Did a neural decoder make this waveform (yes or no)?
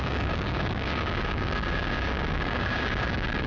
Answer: yes